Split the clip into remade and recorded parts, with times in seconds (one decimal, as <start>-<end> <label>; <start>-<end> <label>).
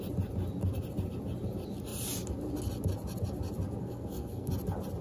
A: 0.0-3.8 recorded; 3.8-4.5 remade; 4.5-5.0 recorded